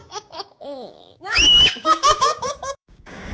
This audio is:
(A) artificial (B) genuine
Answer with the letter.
A